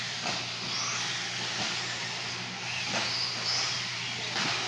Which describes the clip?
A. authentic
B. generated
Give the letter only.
A